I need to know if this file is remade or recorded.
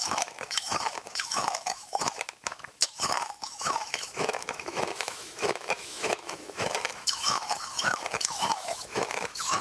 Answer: remade